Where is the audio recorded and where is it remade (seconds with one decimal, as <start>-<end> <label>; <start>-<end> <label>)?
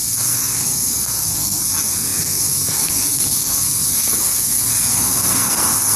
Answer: 0.0-6.0 remade